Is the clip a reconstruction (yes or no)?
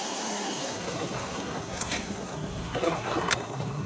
yes